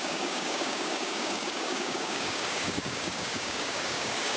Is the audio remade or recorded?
remade